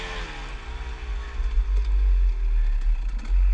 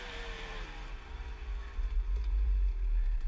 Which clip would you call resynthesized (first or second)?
second